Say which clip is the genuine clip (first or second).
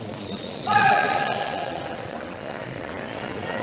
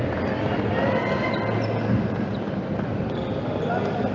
second